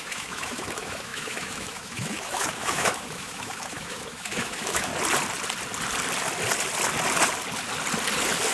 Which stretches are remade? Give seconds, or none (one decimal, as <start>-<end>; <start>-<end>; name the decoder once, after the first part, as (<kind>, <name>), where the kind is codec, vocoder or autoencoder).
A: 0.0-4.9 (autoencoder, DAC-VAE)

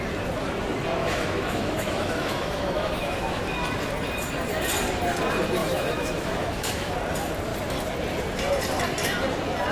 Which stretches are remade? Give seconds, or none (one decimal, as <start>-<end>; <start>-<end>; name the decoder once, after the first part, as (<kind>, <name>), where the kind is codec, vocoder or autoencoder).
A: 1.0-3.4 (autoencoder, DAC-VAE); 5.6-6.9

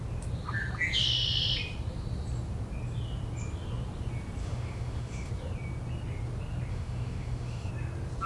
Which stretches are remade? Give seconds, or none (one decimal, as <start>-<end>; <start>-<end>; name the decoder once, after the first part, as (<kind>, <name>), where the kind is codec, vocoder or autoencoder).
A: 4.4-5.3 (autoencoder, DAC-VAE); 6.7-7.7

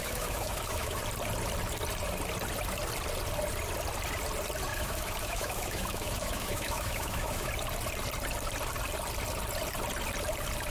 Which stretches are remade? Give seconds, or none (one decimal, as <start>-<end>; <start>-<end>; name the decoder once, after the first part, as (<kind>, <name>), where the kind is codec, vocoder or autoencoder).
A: 0.0-1.0 (autoencoder, DAC-VAE); 4.7-7.5

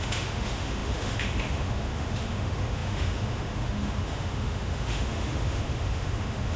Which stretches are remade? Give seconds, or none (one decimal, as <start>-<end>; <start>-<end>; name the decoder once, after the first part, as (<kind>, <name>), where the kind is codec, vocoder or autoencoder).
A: 0.0-6.6 (autoencoder, DAC-VAE)